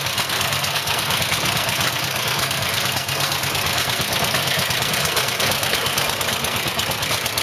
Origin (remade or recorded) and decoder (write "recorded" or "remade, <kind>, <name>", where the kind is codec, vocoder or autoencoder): remade, codec, SNAC